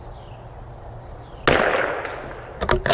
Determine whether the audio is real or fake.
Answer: real